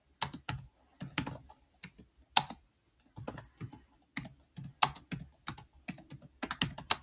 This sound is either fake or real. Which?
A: real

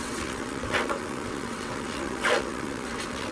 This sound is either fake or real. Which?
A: fake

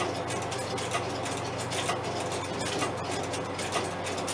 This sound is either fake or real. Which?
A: real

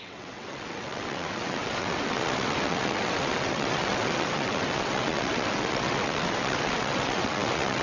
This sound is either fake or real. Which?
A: fake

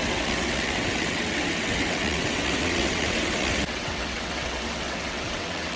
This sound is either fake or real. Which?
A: fake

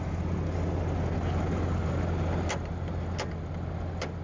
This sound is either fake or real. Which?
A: real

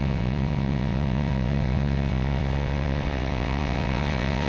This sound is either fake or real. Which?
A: fake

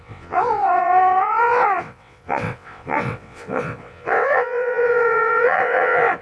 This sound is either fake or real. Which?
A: fake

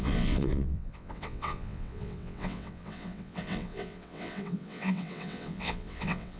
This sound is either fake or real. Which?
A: fake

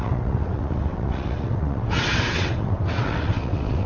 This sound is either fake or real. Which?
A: fake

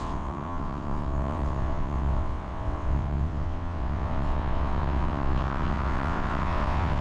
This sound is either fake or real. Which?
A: fake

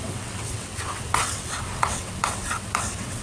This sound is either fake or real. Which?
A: fake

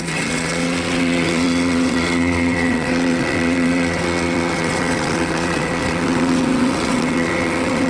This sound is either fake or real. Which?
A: fake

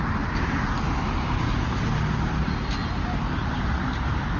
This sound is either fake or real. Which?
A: real